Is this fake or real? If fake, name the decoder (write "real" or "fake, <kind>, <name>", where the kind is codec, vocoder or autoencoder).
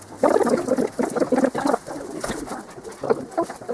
real